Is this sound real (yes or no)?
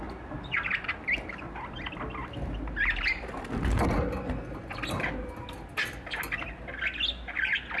yes